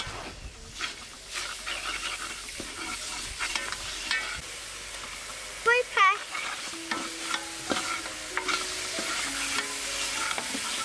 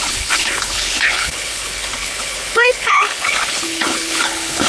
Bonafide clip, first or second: first